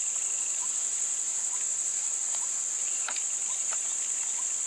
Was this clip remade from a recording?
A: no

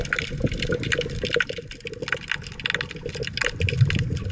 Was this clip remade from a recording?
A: no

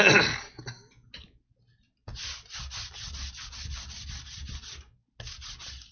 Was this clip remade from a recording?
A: no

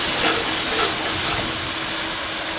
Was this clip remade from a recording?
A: no